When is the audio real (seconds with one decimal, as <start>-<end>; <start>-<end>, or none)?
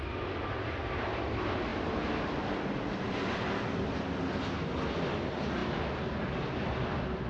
0.0-7.3